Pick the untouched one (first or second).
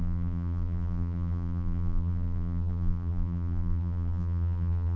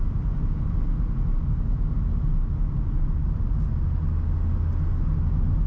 second